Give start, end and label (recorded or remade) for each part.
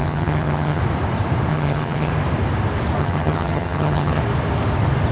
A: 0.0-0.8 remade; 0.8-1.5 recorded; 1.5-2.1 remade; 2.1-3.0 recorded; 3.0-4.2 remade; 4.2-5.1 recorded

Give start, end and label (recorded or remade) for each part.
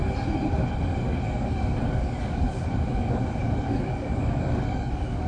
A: 0.0-1.5 recorded; 1.5-2.5 remade; 2.5-3.4 recorded; 3.4-5.3 remade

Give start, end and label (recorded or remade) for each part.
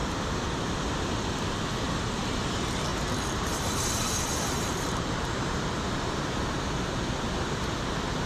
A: 0.0-2.9 recorded; 2.9-6.7 remade; 6.7-8.3 recorded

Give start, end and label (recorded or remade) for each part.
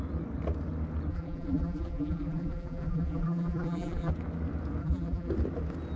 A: 0.0-1.1 recorded; 1.1-4.1 remade; 4.1-4.8 recorded; 4.8-5.3 remade; 5.3-6.0 recorded